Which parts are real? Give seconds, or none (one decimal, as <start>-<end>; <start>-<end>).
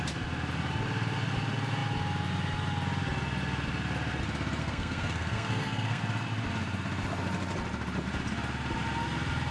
0.0-4.6; 6.0-9.5